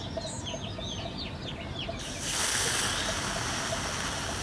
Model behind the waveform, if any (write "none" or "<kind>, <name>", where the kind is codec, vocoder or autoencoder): none